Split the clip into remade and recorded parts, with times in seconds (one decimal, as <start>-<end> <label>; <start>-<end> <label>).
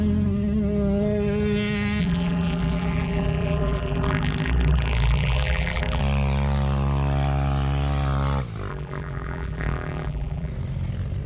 0.0-2.0 recorded; 2.0-6.0 remade; 6.0-8.7 recorded; 8.7-10.5 remade; 10.5-11.3 recorded